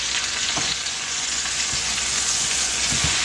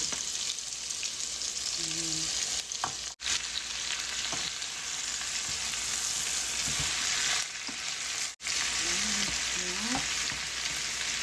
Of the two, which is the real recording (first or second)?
second